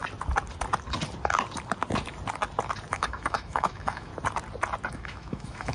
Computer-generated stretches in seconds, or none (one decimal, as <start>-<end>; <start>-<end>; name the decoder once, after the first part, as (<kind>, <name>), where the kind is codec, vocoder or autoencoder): 2.9-4.1 (autoencoder, DAC-VAE); 4.9-5.7